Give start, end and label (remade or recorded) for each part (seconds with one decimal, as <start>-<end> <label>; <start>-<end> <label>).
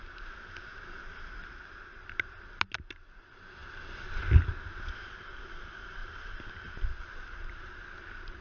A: 0.0-8.4 recorded